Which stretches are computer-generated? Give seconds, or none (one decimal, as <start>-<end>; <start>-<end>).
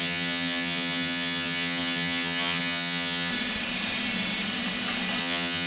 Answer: 0.0-3.3; 5.2-5.7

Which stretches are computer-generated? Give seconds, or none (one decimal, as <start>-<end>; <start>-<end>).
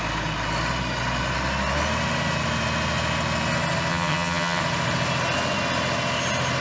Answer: 3.9-4.6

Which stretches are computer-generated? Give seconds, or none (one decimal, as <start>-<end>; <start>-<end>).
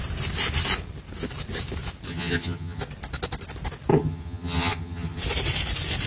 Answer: 2.1-2.8; 3.9-5.2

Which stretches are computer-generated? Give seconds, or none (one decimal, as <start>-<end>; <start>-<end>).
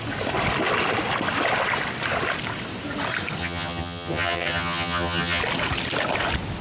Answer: 3.4-5.4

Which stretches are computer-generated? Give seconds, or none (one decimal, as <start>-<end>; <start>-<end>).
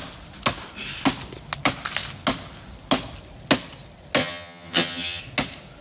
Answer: 4.2-5.2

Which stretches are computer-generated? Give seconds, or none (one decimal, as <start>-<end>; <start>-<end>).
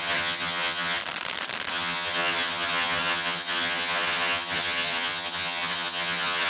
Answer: 0.0-1.0; 1.7-6.5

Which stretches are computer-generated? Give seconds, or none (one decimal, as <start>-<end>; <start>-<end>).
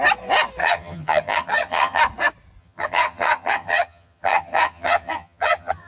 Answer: 0.6-2.0; 2.6-5.9